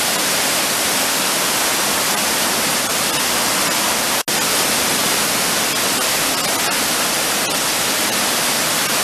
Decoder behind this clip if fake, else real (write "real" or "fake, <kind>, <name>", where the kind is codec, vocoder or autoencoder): real